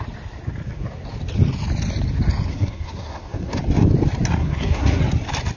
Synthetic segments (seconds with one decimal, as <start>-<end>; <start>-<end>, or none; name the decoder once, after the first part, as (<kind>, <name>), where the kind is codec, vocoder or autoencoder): 2.5-3.6 (codec, SNAC); 4.4-5.0